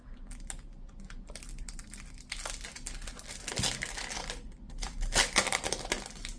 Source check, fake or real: real